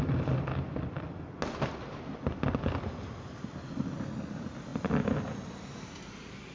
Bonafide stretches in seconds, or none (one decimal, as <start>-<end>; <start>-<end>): 0.0-6.5